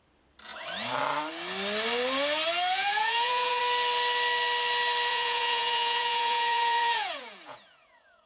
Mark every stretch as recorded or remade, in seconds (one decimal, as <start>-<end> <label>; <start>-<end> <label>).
0.0-2.7 recorded; 2.7-3.6 remade; 3.6-5.1 recorded; 5.1-8.3 remade